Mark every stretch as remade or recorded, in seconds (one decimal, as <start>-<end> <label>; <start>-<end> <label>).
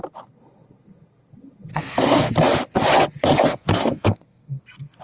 0.0-1.7 recorded; 1.7-2.3 remade; 2.3-3.5 recorded; 3.5-5.0 remade